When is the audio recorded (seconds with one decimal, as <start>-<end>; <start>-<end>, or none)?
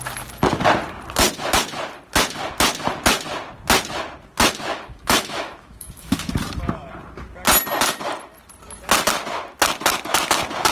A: 0.0-4.7; 6.3-10.7